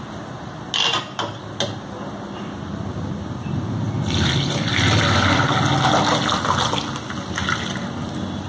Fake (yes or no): no